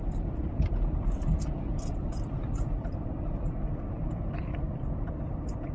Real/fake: fake